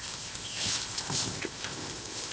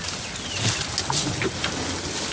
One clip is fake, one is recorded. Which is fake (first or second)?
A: first